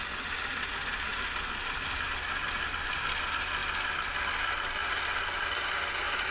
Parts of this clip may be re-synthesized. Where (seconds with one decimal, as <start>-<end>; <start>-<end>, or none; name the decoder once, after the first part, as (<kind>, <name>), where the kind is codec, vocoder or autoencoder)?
none